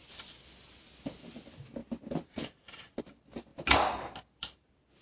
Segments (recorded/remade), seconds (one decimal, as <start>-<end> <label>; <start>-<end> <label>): 0.0-5.0 recorded